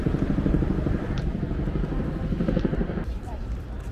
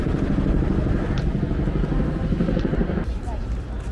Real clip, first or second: second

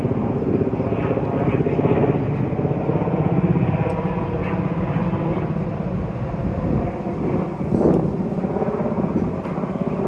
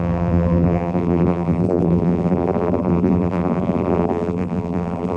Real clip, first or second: first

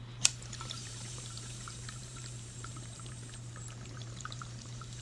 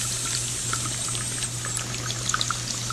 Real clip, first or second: second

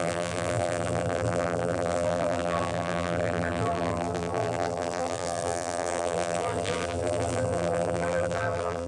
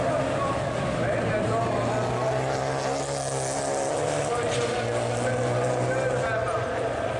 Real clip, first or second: second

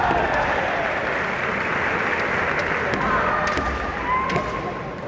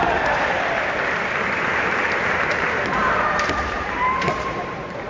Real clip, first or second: first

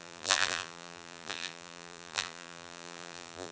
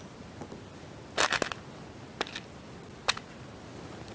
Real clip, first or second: second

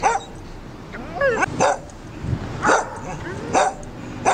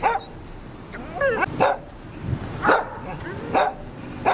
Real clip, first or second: first